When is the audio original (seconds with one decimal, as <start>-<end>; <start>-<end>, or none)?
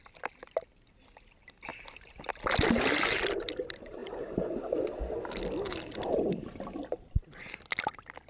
0.0-8.3